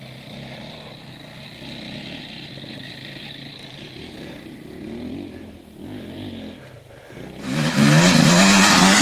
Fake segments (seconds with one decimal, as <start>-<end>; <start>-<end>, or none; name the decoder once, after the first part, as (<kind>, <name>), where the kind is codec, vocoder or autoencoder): none